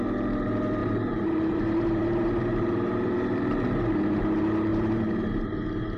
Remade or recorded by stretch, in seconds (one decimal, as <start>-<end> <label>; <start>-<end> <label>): 0.0-0.8 recorded; 0.8-4.2 remade; 4.2-4.7 recorded; 4.7-5.6 remade; 5.6-6.0 recorded